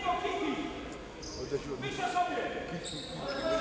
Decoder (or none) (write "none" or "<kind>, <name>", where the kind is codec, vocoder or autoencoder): none